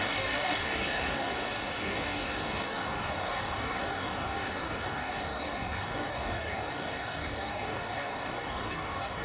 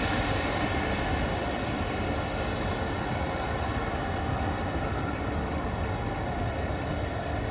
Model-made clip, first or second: first